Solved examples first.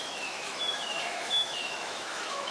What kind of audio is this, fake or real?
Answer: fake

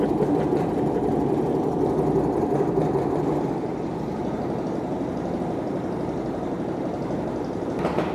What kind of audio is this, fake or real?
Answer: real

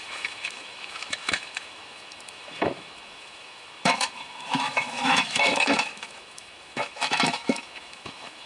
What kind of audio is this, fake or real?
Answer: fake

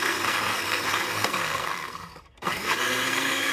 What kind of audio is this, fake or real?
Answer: fake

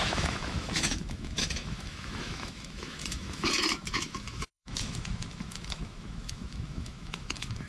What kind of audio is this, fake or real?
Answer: fake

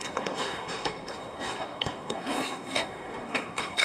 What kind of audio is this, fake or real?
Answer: fake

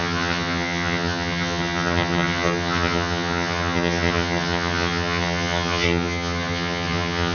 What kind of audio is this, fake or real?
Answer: fake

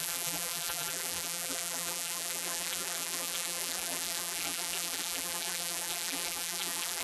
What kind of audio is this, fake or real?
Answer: fake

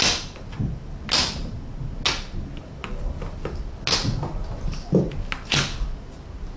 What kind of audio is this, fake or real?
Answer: real